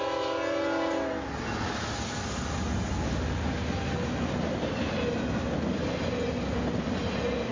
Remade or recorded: recorded